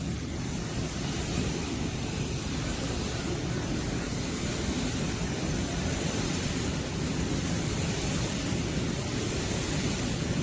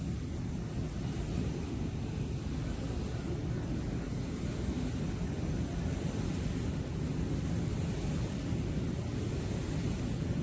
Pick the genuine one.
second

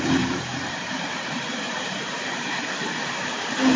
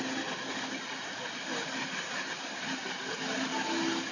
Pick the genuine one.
second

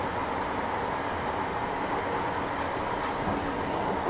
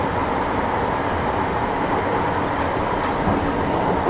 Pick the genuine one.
first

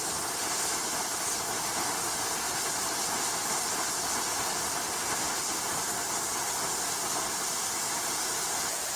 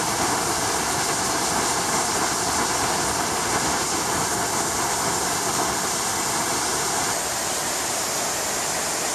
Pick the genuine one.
first